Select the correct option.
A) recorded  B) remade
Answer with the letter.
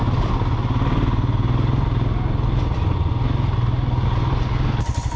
A